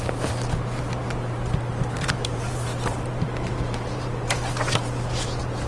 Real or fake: fake